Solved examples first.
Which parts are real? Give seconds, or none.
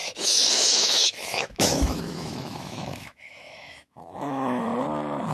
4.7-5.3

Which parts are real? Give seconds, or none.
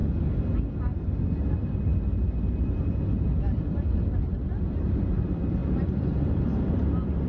0.0-7.3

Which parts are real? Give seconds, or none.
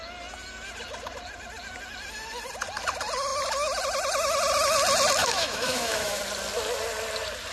0.0-5.2; 6.2-7.5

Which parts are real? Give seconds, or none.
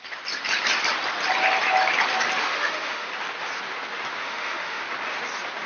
0.0-2.4; 3.1-4.2; 4.8-5.7